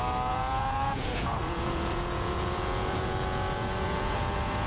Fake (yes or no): yes